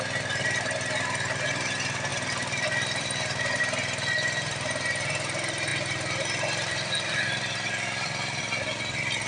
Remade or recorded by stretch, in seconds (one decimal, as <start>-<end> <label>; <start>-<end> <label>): 0.0-2.1 recorded; 2.1-3.6 remade; 3.6-5.7 recorded; 5.7-8.4 remade; 8.4-9.3 recorded

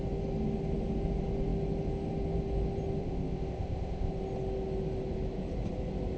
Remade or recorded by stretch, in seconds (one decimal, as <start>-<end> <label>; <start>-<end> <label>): 0.0-3.0 recorded; 3.0-4.1 remade; 4.1-6.2 recorded

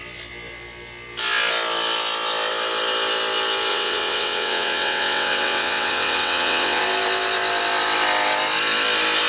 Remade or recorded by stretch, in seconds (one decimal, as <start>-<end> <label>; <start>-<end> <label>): 0.0-3.7 recorded; 3.7-6.8 remade; 6.8-9.3 recorded

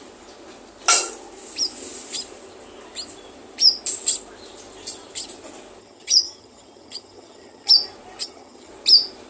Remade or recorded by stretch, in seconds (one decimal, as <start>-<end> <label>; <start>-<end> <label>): 0.0-5.8 recorded; 5.8-7.7 remade; 7.7-8.2 recorded; 8.2-8.7 remade; 8.7-9.3 recorded

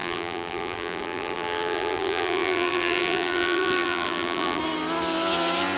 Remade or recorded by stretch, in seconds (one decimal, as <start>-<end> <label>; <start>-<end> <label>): 0.0-4.6 remade; 4.6-5.8 recorded

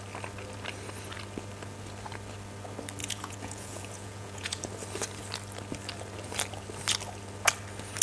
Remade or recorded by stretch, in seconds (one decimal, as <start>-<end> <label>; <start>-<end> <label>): 0.0-3.0 recorded; 3.0-4.6 remade; 4.6-8.0 recorded

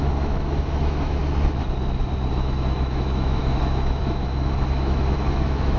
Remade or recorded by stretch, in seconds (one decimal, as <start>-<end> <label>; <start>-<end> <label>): 0.0-1.2 remade; 1.2-2.3 recorded; 2.3-5.8 remade